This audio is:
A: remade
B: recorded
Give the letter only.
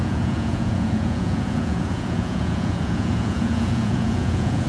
A